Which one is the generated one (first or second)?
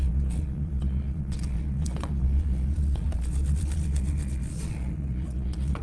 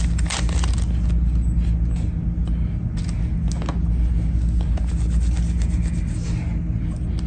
first